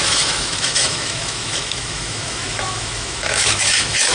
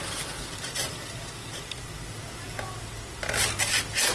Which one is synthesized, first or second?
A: first